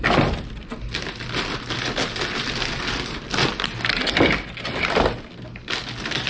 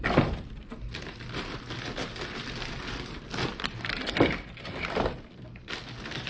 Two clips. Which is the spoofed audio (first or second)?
second